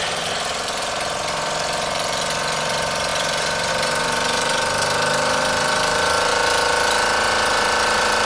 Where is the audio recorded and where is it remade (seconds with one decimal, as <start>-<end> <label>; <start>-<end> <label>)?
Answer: 0.0-6.3 remade; 6.3-7.5 recorded; 7.5-8.2 remade